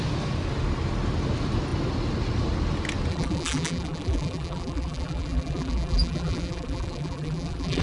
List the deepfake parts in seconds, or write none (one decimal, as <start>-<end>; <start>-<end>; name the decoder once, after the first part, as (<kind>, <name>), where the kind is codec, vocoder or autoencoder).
3.1-7.8 (vocoder, BigVGAN v2)